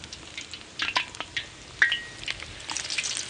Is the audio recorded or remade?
recorded